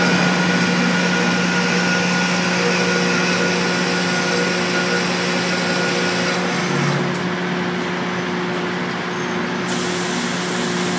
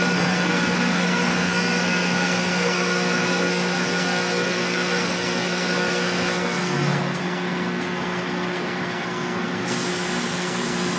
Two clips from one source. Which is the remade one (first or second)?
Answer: second